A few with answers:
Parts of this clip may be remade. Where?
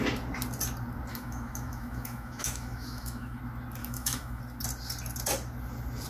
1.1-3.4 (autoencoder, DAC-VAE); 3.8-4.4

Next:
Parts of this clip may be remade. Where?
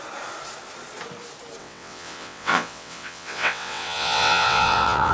1.6-5.1 (vocoder, WaveNeXt)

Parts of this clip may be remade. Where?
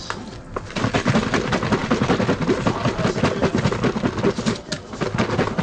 none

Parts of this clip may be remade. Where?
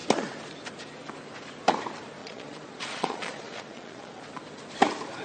2.2-4.2 (vocoder, Vocos)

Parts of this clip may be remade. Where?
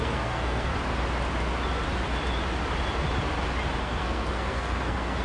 0.0-0.7 (codec, SNAC); 3.8-5.2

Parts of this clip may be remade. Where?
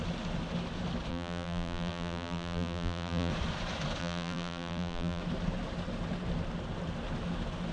1.1-3.3 (vocoder, BigVGAN v2); 4.0-5.2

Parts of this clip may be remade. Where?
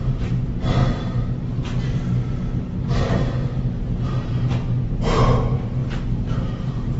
none